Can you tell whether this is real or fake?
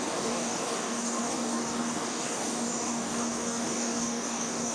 fake